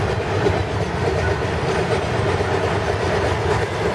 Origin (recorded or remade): recorded